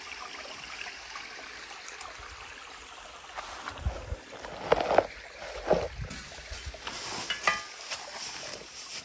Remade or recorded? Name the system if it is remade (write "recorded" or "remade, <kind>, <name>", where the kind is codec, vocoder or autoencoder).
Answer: recorded